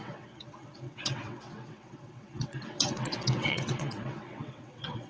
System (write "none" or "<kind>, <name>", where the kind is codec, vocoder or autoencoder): vocoder, WaveNeXt